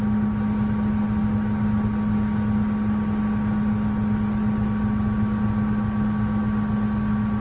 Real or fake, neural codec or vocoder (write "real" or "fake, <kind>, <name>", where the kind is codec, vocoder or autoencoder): real